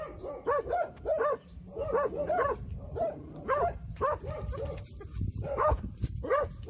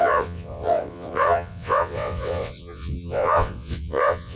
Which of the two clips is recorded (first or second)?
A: first